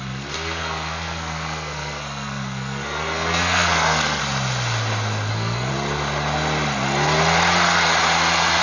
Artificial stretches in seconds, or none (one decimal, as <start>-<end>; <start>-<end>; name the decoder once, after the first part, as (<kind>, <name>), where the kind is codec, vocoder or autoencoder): 0.0-4.2 (codec, SNAC); 5.3-5.7